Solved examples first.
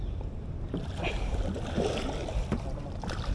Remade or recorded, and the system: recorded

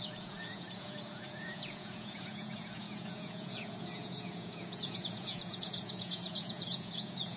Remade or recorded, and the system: remade, vocoder, Vocos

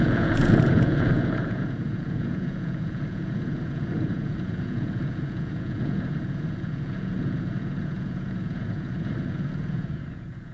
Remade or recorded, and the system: remade, vocoder, Vocos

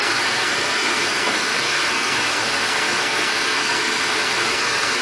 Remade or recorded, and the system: remade, codec, SNAC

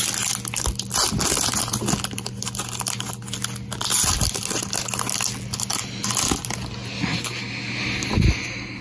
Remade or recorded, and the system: recorded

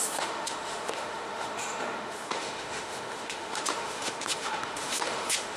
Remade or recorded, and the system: remade, autoencoder, DAC-VAE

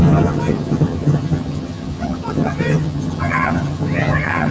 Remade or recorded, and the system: remade, vocoder, HiFi-GAN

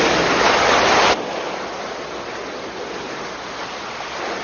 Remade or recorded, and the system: recorded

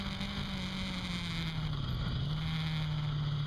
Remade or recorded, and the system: recorded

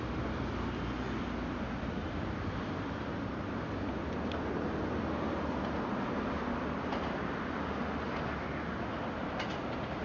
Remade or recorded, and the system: recorded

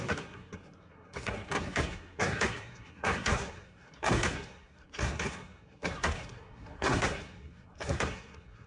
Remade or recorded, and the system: remade, codec, SNAC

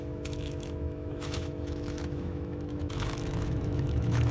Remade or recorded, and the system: remade, autoencoder, DAC-VAE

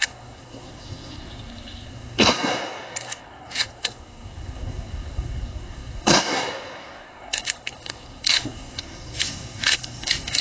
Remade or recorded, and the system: remade, codec, SNAC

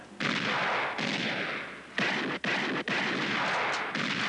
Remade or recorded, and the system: recorded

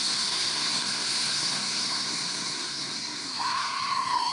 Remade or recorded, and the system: remade, codec, SNAC